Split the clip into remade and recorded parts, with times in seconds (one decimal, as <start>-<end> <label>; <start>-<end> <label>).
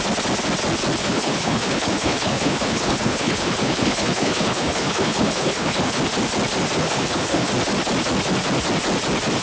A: 0.0-1.0 recorded; 1.0-6.0 remade; 6.0-6.8 recorded; 6.8-7.5 remade; 7.5-9.4 recorded